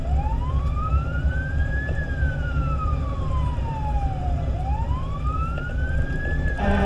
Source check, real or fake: fake